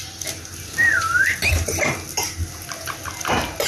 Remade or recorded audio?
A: recorded